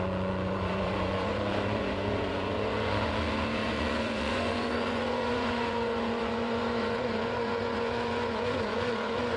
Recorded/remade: remade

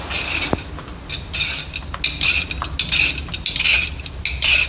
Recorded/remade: recorded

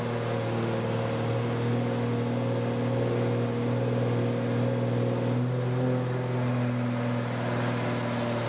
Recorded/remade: recorded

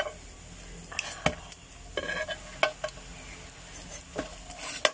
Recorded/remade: recorded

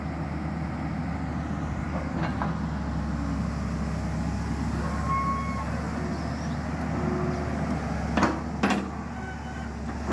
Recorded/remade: recorded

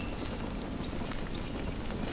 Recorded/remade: recorded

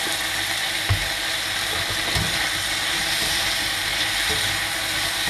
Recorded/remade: recorded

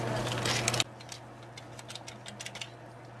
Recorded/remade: recorded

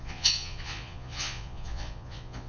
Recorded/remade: remade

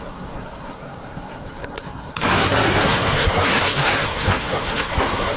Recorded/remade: remade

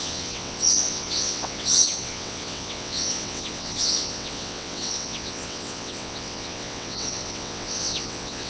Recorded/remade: remade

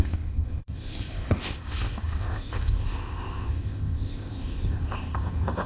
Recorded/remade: remade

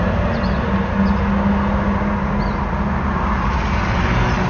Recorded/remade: recorded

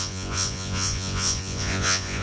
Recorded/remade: remade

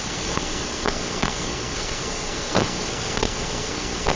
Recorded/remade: remade